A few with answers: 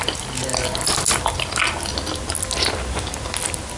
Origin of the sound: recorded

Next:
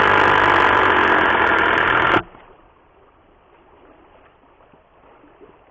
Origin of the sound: recorded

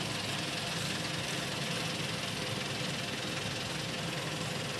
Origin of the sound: recorded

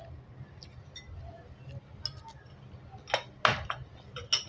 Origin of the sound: recorded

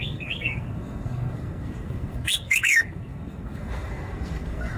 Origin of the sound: remade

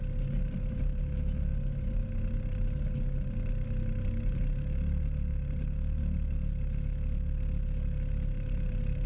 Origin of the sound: recorded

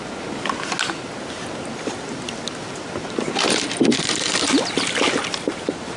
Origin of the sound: recorded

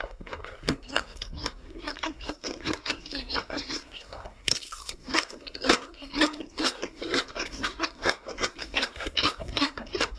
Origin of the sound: remade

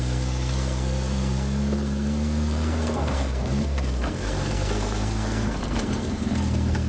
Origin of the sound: remade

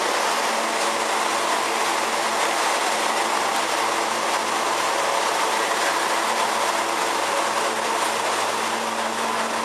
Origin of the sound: recorded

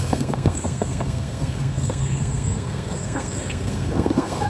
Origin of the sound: remade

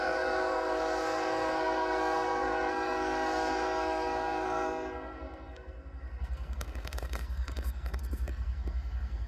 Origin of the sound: remade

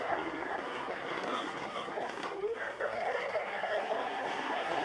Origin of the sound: remade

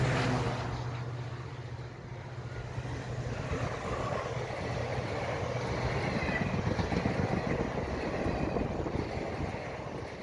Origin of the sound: recorded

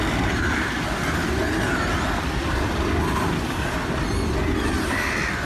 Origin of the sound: recorded